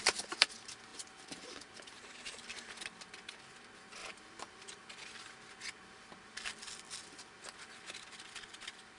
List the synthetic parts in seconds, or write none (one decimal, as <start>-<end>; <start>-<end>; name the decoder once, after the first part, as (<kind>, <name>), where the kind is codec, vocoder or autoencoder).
0.9-3.5 (vocoder, BigVGAN v2)